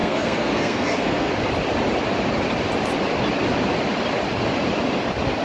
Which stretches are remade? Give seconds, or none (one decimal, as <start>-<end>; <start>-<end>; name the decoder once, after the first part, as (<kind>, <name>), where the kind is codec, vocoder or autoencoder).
0.0-1.3 (codec, SNAC)